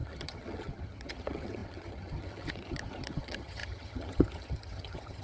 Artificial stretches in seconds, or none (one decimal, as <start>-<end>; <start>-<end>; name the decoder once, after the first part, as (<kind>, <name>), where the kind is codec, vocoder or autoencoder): 0.0-5.2 (vocoder, HiFi-GAN)